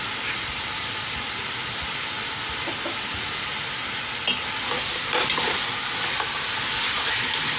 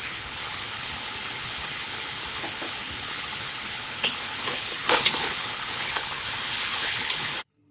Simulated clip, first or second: second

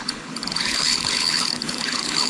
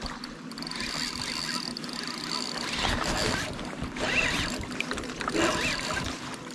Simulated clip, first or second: first